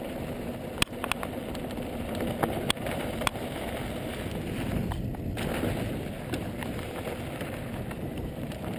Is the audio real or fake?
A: real